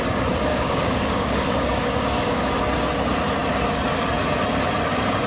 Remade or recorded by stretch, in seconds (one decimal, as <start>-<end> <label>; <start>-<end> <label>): 0.0-0.5 recorded; 0.5-2.5 remade; 2.5-5.3 recorded